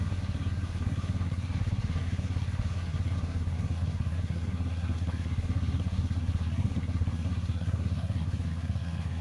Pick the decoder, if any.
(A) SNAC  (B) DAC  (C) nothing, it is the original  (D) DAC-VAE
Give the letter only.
A